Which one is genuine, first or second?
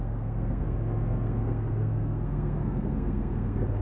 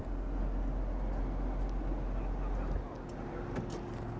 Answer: second